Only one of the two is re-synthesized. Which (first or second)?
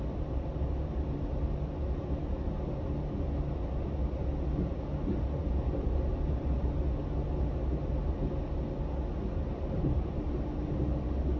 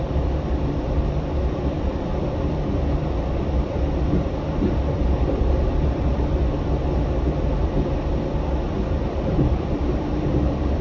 second